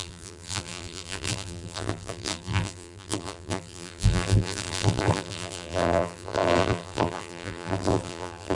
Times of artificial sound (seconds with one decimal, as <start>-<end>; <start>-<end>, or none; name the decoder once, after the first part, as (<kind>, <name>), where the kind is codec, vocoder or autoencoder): 0.0-8.5 (vocoder, BigVGAN v2)